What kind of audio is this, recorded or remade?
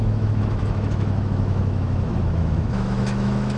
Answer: remade